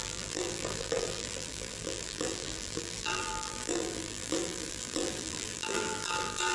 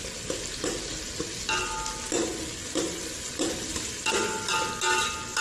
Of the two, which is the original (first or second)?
second